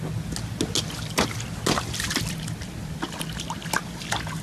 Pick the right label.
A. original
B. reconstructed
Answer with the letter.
A